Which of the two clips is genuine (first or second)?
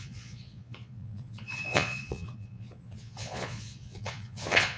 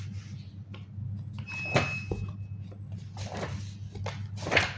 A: second